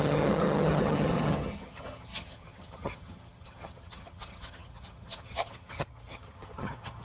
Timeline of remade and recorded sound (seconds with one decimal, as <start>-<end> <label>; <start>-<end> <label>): 0.0-7.0 remade